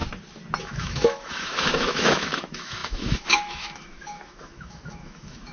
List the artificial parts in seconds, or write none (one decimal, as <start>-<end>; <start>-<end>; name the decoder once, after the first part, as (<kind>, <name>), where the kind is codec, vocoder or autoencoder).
0.6-5.5 (autoencoder, DAC-VAE)